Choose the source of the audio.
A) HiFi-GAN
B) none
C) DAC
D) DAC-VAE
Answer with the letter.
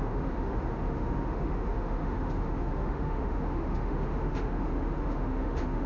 D